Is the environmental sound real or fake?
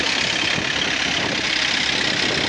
real